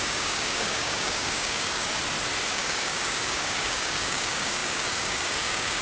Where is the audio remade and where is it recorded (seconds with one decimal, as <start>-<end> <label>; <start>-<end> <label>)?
0.0-1.9 remade; 1.9-2.5 recorded; 2.5-5.8 remade